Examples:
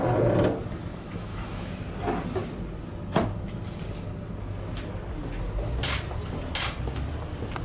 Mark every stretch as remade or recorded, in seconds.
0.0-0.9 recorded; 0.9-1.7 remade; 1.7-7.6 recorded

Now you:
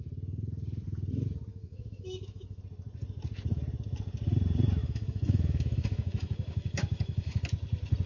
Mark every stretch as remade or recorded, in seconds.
0.0-1.5 recorded; 1.5-2.6 remade; 2.6-4.8 recorded; 4.8-7.4 remade; 7.4-8.1 recorded

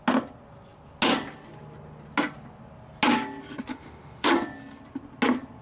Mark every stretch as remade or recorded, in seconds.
0.0-3.7 recorded; 3.7-4.3 remade; 4.3-5.6 recorded

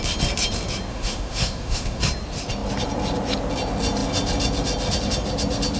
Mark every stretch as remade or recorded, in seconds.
0.0-0.9 recorded; 0.9-2.0 remade; 2.0-5.8 recorded

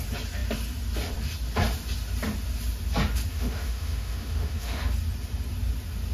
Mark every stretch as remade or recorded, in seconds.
0.0-3.3 recorded; 3.3-4.8 remade; 4.8-6.1 recorded

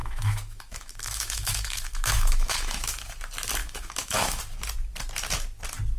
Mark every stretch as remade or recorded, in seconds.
0.0-3.1 remade; 3.1-3.6 recorded; 3.6-4.4 remade; 4.4-6.0 recorded